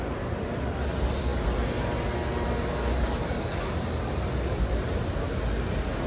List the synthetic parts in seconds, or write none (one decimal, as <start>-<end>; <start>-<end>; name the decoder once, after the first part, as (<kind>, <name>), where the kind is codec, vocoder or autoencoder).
none